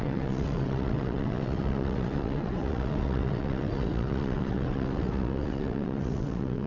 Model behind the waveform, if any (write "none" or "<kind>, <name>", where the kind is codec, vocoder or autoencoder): vocoder, WaveNeXt